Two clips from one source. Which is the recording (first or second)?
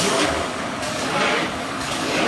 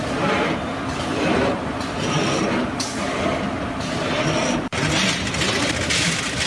second